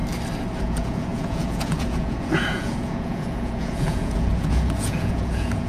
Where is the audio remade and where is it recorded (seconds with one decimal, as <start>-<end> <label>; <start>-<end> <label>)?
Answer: 0.0-0.6 recorded; 0.6-5.7 remade